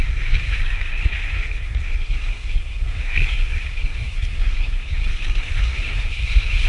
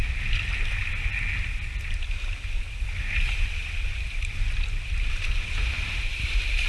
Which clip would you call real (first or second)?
second